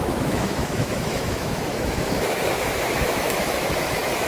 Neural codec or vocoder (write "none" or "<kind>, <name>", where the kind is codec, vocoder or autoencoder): autoencoder, DAC-VAE